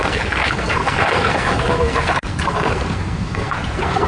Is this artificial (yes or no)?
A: yes